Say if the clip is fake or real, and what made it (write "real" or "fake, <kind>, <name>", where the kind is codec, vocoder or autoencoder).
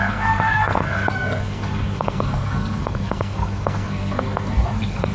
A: fake, codec, SNAC